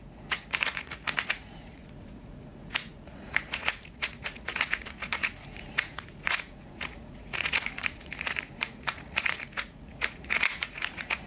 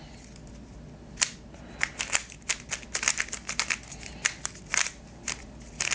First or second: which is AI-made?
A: first